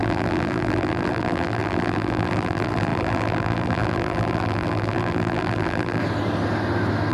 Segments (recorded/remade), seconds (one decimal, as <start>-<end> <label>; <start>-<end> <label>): 0.0-6.0 remade; 6.0-7.1 recorded